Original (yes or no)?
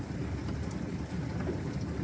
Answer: yes